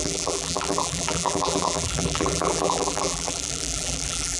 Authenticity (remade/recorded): remade